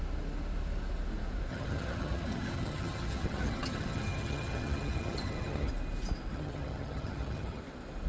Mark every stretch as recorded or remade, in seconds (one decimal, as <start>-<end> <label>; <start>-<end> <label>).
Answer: 0.0-1.5 recorded; 1.5-5.7 remade; 5.7-6.3 recorded; 6.3-7.6 remade; 7.6-8.1 recorded